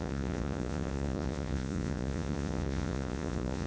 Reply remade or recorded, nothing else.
remade